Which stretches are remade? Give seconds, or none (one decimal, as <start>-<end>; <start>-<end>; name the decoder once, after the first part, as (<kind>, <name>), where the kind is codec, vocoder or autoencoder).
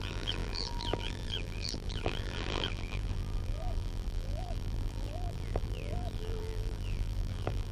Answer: 0.0-7.7 (vocoder, BigVGAN v2)